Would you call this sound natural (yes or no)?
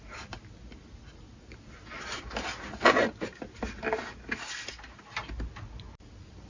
yes